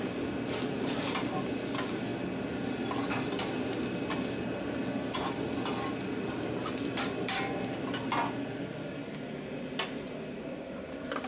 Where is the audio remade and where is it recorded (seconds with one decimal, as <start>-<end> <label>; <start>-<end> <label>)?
0.0-11.3 recorded